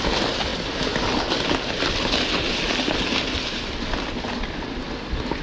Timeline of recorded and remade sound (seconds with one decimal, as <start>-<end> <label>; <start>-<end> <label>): 0.0-5.4 recorded

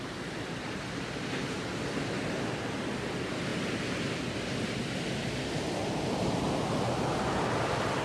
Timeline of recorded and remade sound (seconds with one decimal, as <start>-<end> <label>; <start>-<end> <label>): 0.0-8.0 recorded